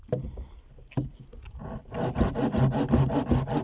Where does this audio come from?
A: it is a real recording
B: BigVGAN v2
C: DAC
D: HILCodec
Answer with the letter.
A